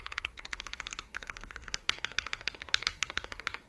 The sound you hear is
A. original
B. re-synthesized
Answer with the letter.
B